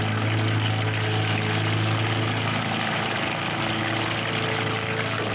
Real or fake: real